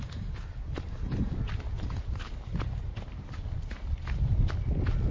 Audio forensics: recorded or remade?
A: recorded